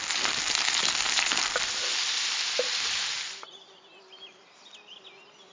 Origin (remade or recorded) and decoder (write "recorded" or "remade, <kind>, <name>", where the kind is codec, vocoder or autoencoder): recorded